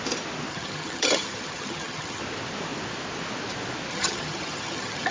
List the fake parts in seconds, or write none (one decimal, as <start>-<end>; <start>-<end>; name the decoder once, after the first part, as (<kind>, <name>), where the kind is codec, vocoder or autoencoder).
0.5-2.2 (vocoder, HiFi-GAN); 3.9-5.1